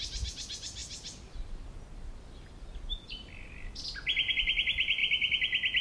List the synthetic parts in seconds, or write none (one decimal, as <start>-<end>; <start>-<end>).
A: none